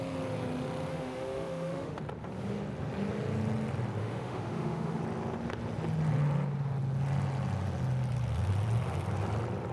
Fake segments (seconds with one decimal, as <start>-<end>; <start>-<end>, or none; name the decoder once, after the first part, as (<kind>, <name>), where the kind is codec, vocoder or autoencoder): 0.9-2.0 (autoencoder, DAC-VAE); 4.0-5.0